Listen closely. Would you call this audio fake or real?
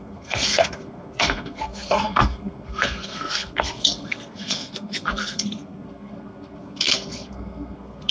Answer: fake